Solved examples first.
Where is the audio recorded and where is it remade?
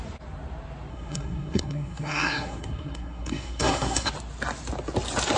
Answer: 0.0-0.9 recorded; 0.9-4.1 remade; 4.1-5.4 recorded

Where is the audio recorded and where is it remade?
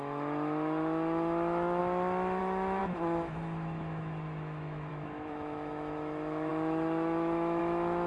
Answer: 0.0-1.8 remade; 1.8-2.4 recorded; 2.4-8.1 remade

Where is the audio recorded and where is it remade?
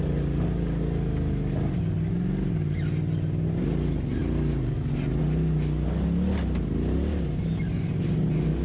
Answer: 0.0-8.6 recorded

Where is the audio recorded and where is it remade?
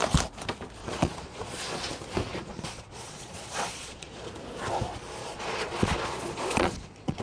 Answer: 0.0-0.8 recorded; 0.8-1.9 remade; 1.9-2.3 recorded; 2.3-4.3 remade; 4.3-5.2 recorded; 5.2-7.2 remade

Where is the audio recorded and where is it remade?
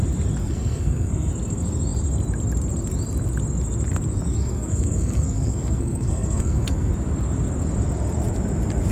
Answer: 0.0-0.4 recorded; 0.4-1.3 remade; 1.3-4.3 recorded; 4.3-6.9 remade; 6.9-8.9 recorded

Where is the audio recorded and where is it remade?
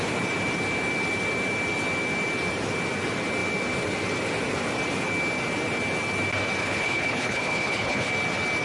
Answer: 0.0-6.6 recorded; 6.6-8.1 remade; 8.1-8.6 recorded